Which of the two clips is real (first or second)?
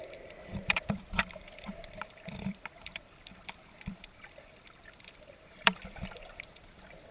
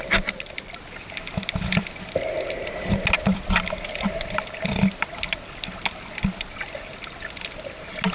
second